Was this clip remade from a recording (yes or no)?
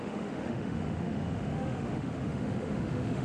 yes